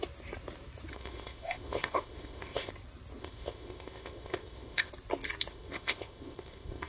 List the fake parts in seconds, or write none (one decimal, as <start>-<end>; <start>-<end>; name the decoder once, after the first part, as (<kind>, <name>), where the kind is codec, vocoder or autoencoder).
0.9-2.7 (codec, ZipCodec); 3.2-4.9; 5.5-6.9